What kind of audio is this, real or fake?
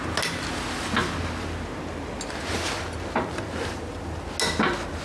real